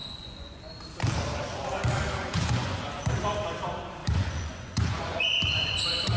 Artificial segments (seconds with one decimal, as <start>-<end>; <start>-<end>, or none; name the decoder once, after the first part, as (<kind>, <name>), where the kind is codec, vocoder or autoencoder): 0.0-0.7 (vocoder, Vocos); 2.2-3.0; 4.0-6.2